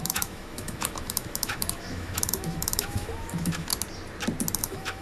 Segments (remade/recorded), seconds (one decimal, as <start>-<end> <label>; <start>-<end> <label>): 0.0-3.7 remade; 3.7-4.6 recorded; 4.6-5.0 remade